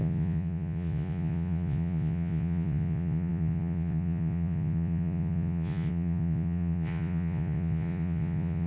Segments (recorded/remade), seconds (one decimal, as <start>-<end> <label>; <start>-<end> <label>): 0.0-8.7 remade

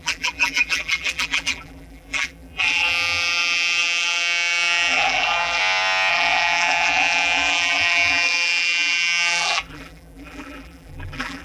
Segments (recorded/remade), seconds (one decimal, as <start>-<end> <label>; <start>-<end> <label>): 0.0-5.6 remade; 5.6-6.1 recorded; 6.1-11.4 remade

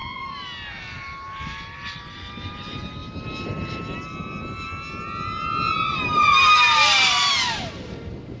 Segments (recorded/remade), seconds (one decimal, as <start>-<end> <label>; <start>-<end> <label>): 0.0-8.4 recorded

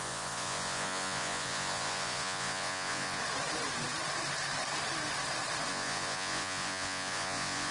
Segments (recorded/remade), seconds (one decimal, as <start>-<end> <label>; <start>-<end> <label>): 0.0-3.2 remade; 3.2-5.7 recorded; 5.7-7.7 remade

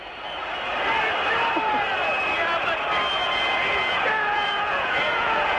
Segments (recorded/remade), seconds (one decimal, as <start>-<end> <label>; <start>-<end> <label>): 0.0-3.2 recorded; 3.2-5.6 remade

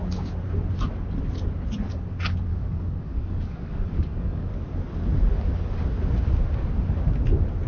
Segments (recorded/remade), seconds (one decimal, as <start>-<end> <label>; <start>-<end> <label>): 0.0-2.5 recorded; 2.5-4.5 remade; 4.5-7.7 recorded

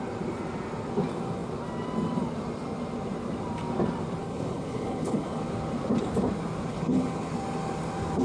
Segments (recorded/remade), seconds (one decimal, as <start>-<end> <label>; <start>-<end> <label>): 0.0-4.2 recorded; 4.2-5.5 remade; 5.5-6.7 recorded; 6.7-7.3 remade; 7.3-8.2 recorded